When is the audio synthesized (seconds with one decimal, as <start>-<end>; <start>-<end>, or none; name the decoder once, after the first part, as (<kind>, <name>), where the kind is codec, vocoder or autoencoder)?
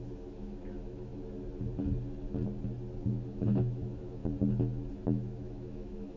0.0-1.1 (autoencoder, DAC-VAE); 3.1-4.2; 4.9-6.2